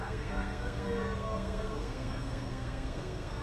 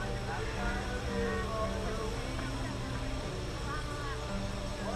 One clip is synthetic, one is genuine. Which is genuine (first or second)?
second